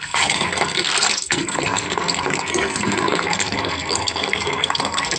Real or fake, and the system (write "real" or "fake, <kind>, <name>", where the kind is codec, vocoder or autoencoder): fake, codec, SNAC